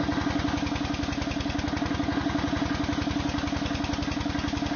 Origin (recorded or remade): recorded